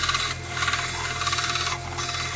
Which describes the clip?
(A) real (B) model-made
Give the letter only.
A